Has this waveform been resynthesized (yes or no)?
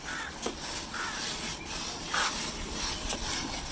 no